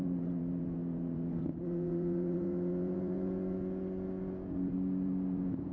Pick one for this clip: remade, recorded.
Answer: remade